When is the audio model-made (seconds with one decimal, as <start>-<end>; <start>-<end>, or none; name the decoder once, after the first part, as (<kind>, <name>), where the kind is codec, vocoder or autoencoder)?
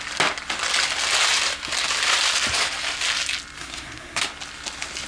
3.6-4.2 (codec, SNAC)